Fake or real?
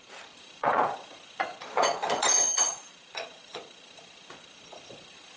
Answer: fake